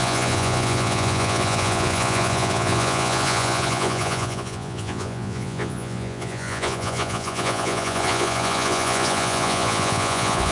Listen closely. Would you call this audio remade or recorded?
remade